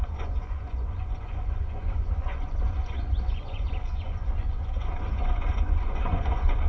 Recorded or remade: remade